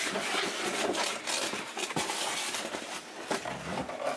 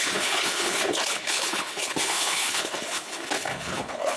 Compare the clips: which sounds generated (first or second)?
second